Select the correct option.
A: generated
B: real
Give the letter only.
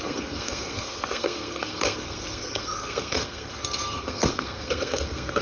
A